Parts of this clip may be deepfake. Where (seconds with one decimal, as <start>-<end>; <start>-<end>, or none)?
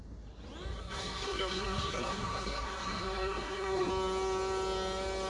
0.7-3.9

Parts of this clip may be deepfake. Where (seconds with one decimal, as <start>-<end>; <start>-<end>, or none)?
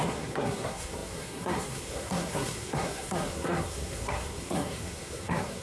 0.0-5.6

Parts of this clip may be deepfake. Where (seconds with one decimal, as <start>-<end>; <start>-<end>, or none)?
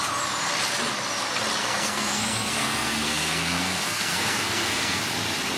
1.6-5.0